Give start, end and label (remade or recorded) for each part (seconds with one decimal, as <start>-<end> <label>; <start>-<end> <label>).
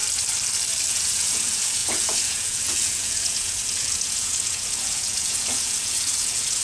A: 0.0-0.9 recorded; 0.9-6.6 remade